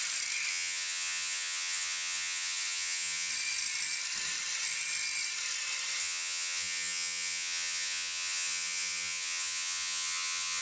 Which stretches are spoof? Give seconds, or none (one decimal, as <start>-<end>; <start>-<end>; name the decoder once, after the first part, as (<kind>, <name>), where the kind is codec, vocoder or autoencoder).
0.5-3.3 (vocoder, HiFi-GAN); 6.0-10.6